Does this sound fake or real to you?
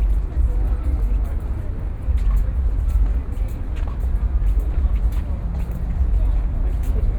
real